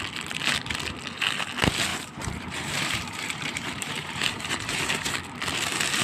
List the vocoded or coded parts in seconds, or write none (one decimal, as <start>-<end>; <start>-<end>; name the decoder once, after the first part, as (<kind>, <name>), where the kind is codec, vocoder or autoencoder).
1.9-5.1 (vocoder, BigVGAN v2)